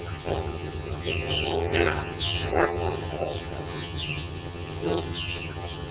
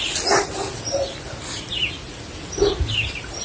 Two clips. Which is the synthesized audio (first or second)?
first